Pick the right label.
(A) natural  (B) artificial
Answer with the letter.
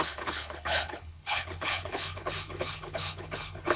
B